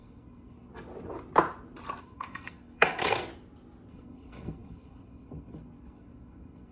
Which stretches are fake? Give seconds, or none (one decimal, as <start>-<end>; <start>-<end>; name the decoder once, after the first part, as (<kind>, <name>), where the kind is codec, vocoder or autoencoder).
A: 0.0-0.7 (codec, SNAC); 2.0-3.3; 3.9-6.7